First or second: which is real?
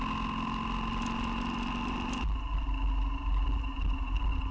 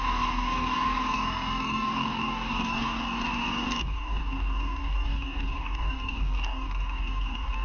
first